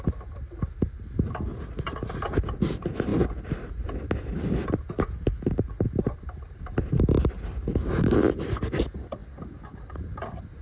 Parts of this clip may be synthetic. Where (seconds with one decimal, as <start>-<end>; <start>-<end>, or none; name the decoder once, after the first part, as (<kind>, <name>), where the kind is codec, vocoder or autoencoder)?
none